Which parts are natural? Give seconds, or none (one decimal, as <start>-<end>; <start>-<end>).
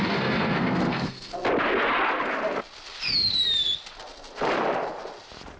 1.3-5.6